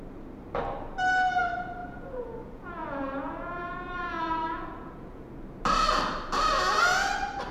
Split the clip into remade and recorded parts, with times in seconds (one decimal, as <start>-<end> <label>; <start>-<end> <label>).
0.0-1.8 recorded; 1.8-5.3 remade; 5.3-7.5 recorded

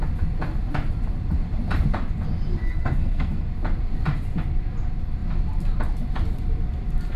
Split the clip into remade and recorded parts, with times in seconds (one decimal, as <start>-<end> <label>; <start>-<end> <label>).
0.0-2.6 recorded; 2.6-3.5 remade; 3.5-7.2 recorded